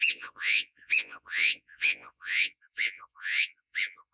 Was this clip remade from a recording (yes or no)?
yes